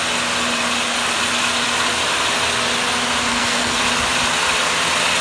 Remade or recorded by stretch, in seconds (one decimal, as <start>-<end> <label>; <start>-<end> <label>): 0.0-3.3 recorded; 3.3-3.8 remade; 3.8-5.2 recorded